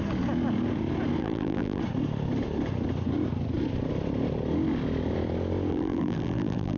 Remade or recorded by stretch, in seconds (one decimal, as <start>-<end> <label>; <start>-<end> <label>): 0.0-1.2 recorded; 1.2-1.8 remade; 1.8-5.7 recorded; 5.7-6.8 remade